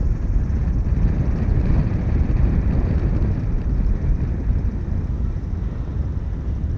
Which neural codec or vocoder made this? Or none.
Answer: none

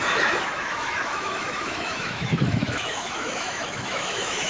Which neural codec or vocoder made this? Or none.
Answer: autoencoder, DAC-VAE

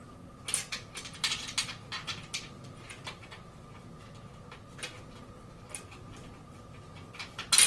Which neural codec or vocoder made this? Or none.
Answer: none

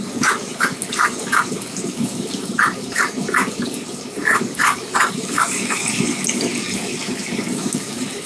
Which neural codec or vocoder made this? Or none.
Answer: codec, DAC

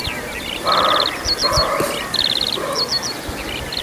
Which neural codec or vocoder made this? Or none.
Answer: none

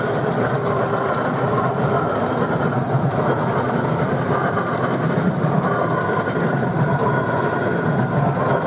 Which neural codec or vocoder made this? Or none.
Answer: none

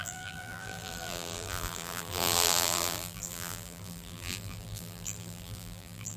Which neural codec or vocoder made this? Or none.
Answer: vocoder, BigVGAN v2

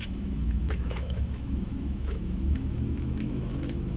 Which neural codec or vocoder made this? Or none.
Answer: autoencoder, DAC-VAE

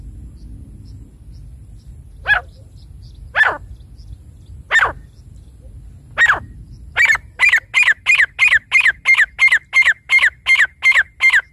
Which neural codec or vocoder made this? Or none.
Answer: none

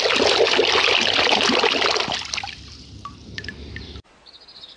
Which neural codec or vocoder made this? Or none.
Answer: none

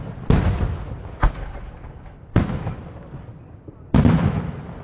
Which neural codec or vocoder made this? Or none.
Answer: none